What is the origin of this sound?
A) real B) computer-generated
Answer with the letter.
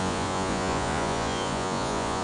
B